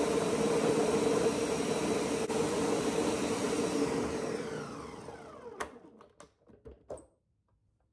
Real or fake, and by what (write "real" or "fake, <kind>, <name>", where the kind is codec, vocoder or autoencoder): real